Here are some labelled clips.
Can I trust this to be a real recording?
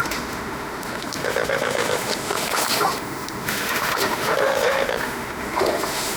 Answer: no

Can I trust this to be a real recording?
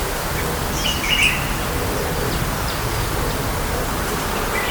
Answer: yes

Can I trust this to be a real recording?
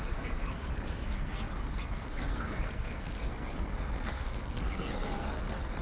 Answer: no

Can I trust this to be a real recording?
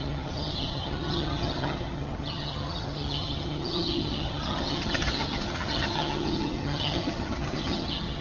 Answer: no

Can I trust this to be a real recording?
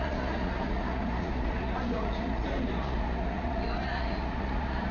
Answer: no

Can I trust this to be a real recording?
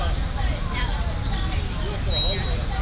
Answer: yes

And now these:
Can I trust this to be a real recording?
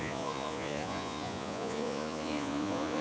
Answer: no